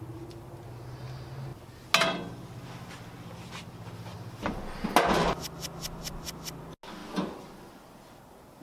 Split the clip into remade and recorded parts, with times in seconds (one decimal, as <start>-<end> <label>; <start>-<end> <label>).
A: 0.0-4.1 recorded; 4.1-4.9 remade; 4.9-7.0 recorded; 7.0-8.2 remade; 8.2-8.6 recorded